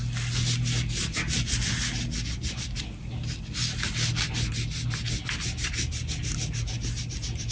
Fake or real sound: real